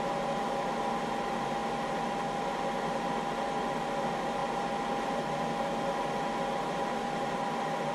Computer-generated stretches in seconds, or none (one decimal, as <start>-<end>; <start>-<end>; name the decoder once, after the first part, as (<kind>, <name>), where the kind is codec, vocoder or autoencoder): none